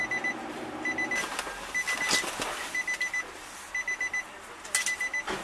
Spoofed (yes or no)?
no